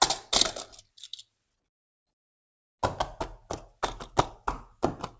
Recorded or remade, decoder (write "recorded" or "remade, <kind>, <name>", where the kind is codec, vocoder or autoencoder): recorded